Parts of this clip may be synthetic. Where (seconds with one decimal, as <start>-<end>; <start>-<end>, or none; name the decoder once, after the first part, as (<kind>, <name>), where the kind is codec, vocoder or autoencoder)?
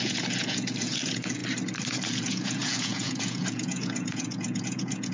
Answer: 0.0-1.4 (vocoder, Vocos); 1.9-5.1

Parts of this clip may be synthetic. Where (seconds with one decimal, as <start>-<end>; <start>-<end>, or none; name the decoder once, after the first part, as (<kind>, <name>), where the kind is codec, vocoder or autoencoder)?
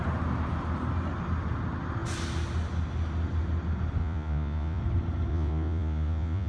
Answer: 4.0-4.8 (vocoder, Vocos); 5.3-6.5